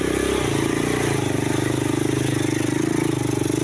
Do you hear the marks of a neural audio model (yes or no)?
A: no